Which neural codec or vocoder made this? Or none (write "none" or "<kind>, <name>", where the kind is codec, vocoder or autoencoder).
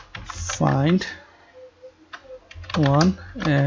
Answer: none